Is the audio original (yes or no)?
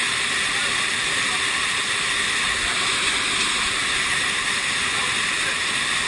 yes